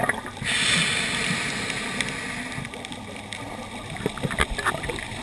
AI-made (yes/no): no